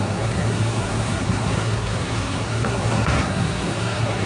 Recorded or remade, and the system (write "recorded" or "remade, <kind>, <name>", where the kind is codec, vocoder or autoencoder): remade, codec, SNAC